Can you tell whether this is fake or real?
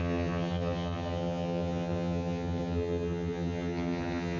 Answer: fake